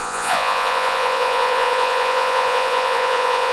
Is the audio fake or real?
fake